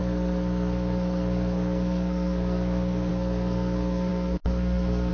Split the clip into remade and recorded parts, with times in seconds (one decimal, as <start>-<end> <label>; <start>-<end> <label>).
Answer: 0.0-5.1 remade

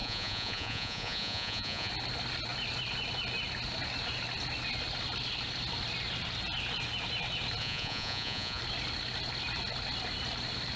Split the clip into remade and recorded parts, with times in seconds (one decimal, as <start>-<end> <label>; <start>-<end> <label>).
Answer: 0.0-1.9 remade; 1.9-7.6 recorded; 7.6-8.6 remade; 8.6-10.8 recorded

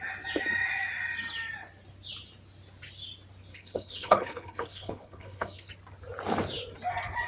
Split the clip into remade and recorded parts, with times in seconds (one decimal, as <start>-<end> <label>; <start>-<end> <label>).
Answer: 0.0-3.5 recorded; 3.5-5.7 remade; 5.7-7.3 recorded

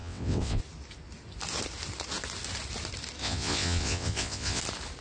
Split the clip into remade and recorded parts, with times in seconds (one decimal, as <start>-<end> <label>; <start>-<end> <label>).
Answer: 0.0-0.6 remade; 0.6-3.2 recorded; 3.2-4.6 remade; 4.6-5.0 recorded

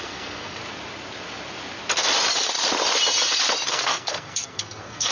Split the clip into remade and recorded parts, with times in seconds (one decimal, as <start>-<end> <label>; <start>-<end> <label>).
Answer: 0.0-0.6 remade; 0.6-3.7 recorded; 3.7-5.1 remade

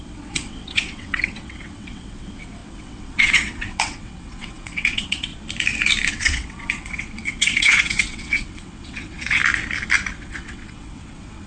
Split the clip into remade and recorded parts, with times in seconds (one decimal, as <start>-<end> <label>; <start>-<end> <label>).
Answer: 0.0-5.3 remade; 5.3-6.1 recorded; 6.1-9.4 remade; 9.4-10.1 recorded; 10.1-11.5 remade